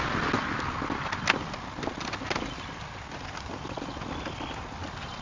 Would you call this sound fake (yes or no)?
no